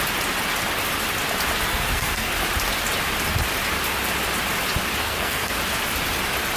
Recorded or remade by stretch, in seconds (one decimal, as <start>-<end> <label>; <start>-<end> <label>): 0.0-1.7 recorded; 1.7-2.3 remade; 2.3-5.0 recorded; 5.0-5.6 remade; 5.6-6.6 recorded